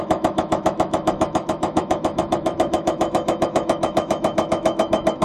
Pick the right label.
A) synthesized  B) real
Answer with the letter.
A